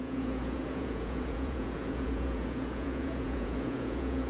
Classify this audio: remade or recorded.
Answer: remade